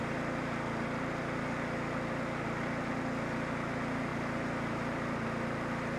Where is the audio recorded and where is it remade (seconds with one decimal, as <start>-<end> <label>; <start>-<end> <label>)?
0.0-6.0 recorded